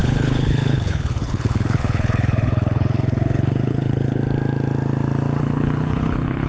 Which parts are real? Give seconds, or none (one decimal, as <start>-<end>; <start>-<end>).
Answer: 4.2-5.4